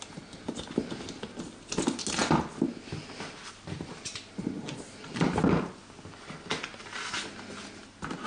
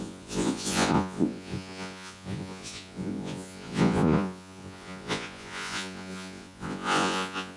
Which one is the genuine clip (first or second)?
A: first